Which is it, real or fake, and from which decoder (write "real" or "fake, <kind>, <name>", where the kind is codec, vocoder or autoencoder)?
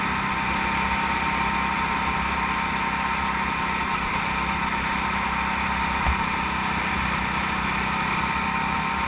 real